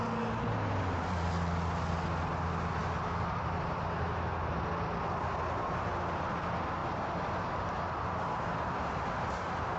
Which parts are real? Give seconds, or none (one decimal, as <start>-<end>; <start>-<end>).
0.0-9.8

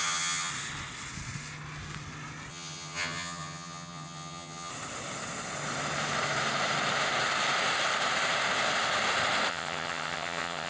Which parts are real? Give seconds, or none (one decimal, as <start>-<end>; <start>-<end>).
0.5-2.5; 4.7-9.5

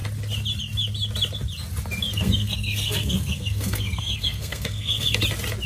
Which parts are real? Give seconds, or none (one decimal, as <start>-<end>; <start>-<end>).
0.0-2.0; 5.2-5.7